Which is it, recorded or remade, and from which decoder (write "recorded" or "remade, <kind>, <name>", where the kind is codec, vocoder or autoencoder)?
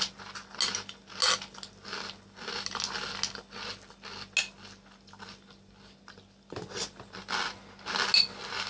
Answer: recorded